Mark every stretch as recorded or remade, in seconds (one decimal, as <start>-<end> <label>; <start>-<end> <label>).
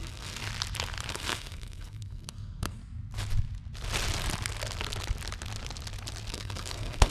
0.0-0.4 remade; 0.4-1.1 recorded; 1.1-2.8 remade; 2.8-6.3 recorded; 6.3-7.1 remade